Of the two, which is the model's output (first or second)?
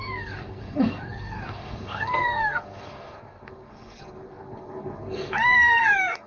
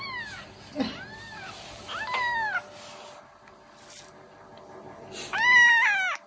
first